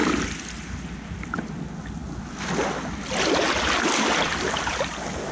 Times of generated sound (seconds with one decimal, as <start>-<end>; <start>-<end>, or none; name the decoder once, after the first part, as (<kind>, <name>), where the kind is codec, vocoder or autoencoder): none